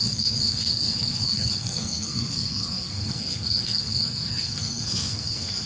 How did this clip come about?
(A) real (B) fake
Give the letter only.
B